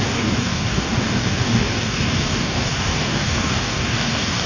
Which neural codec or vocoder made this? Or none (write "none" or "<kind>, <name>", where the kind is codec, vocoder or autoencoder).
codec, DAC